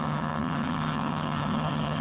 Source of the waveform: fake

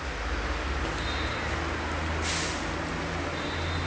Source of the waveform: real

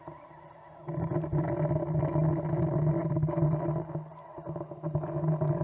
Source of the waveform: real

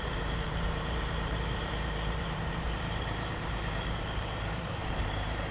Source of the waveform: fake